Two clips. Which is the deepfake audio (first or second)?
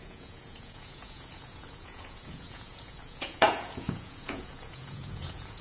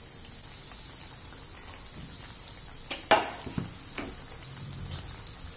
first